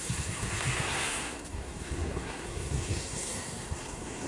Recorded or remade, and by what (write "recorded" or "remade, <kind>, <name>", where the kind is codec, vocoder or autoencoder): remade, codec, SNAC